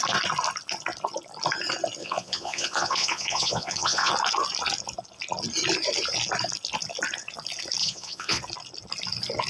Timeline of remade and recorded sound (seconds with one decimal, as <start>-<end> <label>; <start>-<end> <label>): 0.0-2.0 recorded; 2.0-4.1 remade; 4.1-7.8 recorded; 7.8-8.4 remade; 8.4-9.5 recorded